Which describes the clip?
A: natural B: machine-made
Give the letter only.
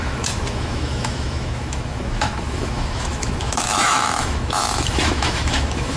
B